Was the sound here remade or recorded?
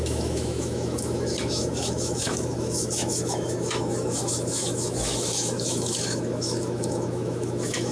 remade